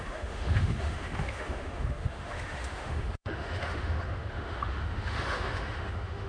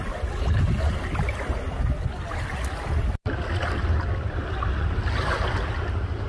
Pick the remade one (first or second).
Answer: first